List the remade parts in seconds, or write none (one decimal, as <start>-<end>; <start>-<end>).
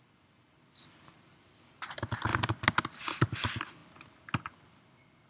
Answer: none